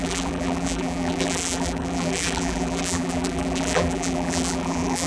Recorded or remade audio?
remade